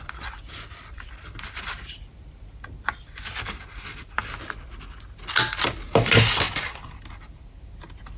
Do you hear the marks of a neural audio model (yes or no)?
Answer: no